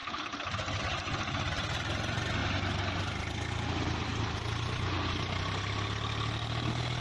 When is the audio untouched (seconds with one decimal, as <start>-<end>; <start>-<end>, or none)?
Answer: 0.0-7.0